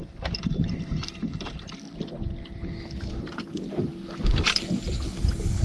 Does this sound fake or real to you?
real